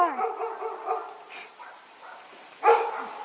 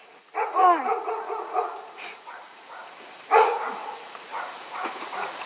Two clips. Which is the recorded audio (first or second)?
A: first